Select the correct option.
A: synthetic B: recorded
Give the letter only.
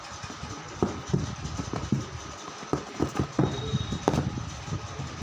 B